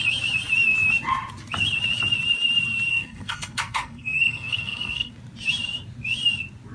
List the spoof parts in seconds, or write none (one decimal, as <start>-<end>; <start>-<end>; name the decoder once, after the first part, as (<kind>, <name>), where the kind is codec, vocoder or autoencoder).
2.9-5.1 (codec, SNAC)